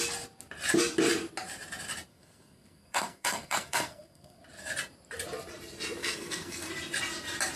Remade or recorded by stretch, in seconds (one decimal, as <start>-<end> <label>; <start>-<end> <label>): 0.0-2.1 recorded; 2.1-4.4 remade; 4.4-6.0 recorded; 6.0-6.7 remade; 6.7-7.6 recorded